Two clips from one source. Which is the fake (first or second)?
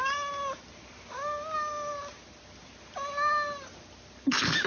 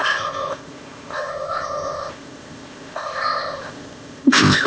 second